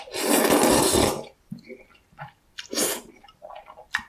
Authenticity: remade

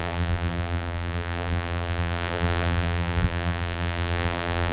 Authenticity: remade